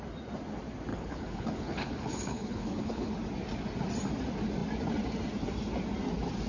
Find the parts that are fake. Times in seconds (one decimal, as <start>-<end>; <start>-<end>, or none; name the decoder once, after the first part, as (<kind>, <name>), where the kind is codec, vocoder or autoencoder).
0.9-3.1 (codec, HILCodec)